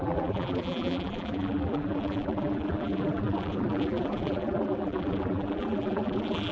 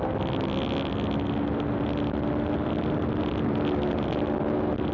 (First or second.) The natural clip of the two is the second